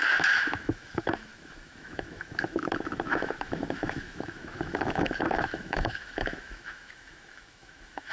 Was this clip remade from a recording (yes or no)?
yes